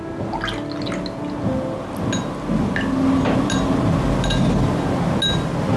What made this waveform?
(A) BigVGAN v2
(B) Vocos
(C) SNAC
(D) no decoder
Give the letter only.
D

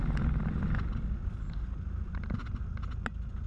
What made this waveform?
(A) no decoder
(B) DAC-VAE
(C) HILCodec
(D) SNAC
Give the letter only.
A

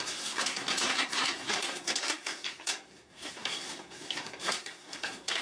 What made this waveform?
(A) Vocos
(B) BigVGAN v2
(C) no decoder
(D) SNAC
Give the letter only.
D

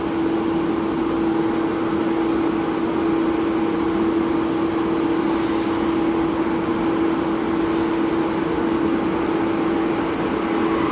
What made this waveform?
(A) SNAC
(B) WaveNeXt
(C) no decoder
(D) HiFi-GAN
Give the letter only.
C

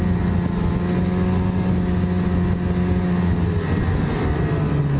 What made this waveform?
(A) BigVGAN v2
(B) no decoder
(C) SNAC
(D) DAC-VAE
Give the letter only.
B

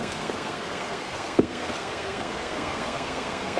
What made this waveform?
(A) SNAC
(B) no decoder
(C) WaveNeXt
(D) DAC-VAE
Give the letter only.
A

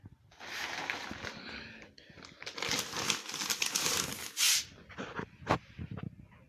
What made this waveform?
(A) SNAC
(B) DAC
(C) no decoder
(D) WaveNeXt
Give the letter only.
C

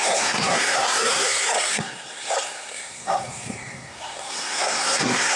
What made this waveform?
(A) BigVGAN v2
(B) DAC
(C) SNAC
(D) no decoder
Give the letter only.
C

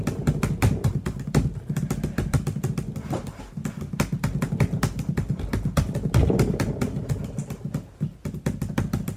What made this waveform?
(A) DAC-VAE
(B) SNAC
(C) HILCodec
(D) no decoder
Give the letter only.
D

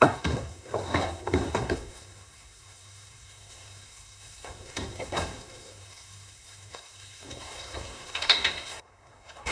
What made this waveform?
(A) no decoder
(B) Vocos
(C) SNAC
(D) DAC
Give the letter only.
C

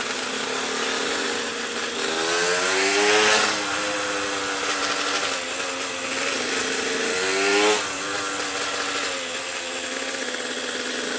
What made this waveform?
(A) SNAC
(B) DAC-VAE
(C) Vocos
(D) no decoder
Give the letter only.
D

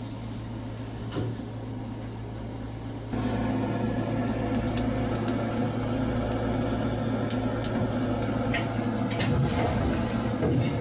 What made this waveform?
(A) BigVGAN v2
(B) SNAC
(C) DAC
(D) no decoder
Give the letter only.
D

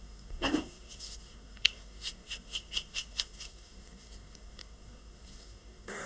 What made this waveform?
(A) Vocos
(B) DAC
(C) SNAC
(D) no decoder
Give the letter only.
C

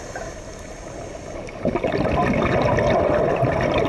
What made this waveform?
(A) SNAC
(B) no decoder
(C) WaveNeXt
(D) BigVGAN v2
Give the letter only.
B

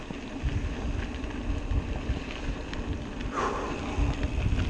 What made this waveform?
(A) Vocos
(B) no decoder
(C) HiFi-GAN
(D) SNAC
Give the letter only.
B